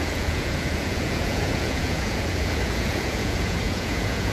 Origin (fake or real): fake